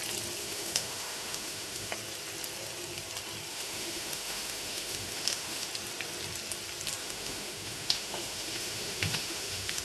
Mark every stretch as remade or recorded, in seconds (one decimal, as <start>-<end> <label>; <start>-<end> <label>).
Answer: 0.0-0.4 recorded; 0.4-1.9 remade; 1.9-3.5 recorded; 3.5-5.7 remade; 5.7-7.0 recorded; 7.0-9.8 remade